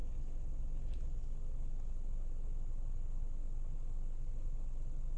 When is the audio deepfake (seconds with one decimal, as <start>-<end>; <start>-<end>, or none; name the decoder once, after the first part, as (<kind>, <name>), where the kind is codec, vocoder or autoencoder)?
none